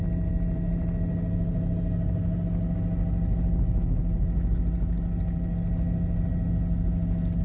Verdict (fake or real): real